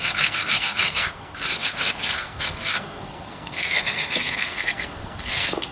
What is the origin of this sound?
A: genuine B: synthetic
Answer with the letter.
B